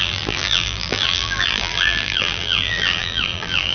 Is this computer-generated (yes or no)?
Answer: yes